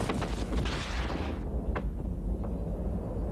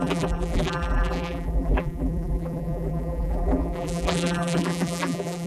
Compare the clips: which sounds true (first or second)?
first